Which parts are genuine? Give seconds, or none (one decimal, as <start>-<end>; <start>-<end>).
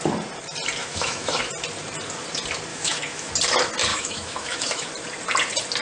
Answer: 0.0-0.8; 1.4-2.7; 3.3-3.9; 4.9-5.8